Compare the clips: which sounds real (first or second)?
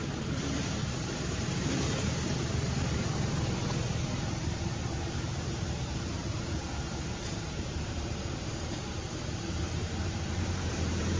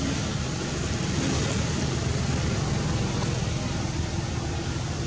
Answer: second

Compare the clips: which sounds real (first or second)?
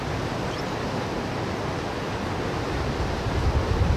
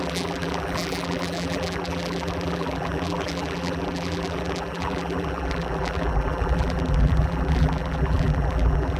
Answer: first